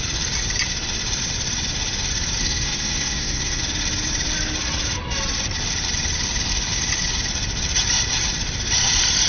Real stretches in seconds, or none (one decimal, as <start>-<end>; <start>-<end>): 0.0-2.4; 3.6-9.3

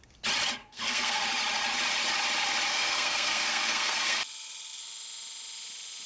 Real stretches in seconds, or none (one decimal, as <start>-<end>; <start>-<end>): 0.0-0.6; 1.2-2.7; 4.2-6.1

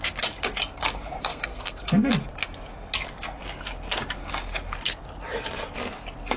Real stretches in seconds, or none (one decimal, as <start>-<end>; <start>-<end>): 0.0-1.2; 2.1-6.4

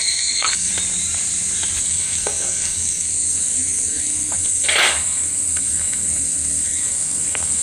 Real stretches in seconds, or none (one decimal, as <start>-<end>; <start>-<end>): 0.7-1.8

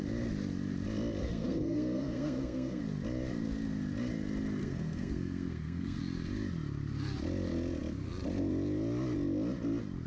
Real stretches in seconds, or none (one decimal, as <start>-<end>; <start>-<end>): 0.0-1.2; 2.8-4.6; 6.0-10.1

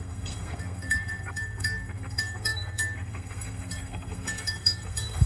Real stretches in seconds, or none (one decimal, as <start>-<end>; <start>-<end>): none

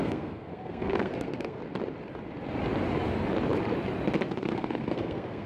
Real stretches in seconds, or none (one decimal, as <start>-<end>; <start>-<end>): 1.6-4.3